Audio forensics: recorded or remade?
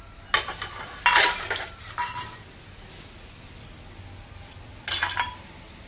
recorded